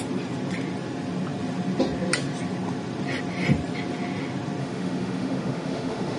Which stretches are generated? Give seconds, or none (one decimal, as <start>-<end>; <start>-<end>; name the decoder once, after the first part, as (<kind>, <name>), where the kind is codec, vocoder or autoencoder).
4.6-6.2 (autoencoder, DAC-VAE)